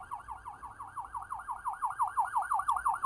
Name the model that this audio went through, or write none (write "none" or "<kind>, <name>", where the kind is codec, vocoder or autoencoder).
none